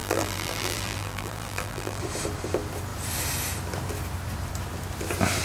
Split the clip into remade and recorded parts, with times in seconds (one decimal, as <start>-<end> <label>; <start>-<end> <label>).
0.0-2.0 remade; 2.0-5.4 recorded